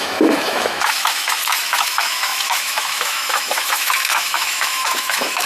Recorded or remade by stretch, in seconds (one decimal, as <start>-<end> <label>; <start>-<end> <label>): 0.0-5.5 remade